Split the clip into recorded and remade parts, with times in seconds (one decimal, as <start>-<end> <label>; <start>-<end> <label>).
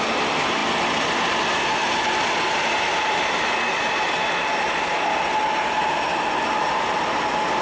0.0-7.6 recorded